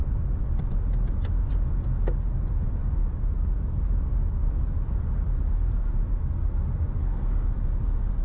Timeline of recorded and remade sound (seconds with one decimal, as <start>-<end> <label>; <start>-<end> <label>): 0.0-0.6 remade; 0.6-4.4 recorded; 4.4-5.0 remade; 5.0-8.2 recorded